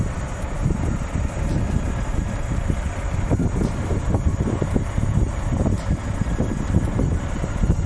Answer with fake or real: real